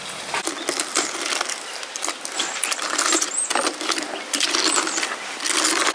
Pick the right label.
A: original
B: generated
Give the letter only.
A